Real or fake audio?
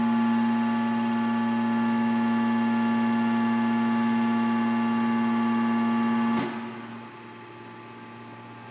real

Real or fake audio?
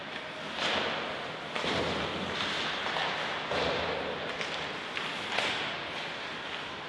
real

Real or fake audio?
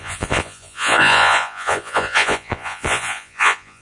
fake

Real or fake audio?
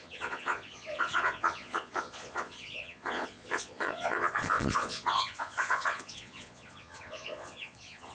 fake